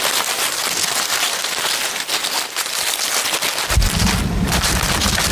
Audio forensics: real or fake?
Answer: real